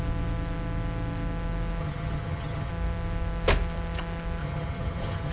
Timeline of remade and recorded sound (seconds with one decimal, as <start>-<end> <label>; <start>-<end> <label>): 0.0-1.8 recorded; 1.8-2.7 remade; 2.7-4.4 recorded; 4.4-5.3 remade